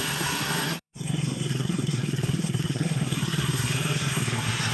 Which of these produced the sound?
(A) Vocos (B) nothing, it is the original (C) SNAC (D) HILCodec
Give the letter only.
C